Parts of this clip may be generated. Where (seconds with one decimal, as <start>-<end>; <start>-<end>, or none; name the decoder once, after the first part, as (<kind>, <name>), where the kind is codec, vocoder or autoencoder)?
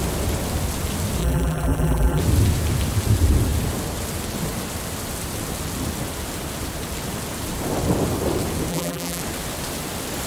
1.2-2.2 (vocoder, BigVGAN v2); 8.7-9.2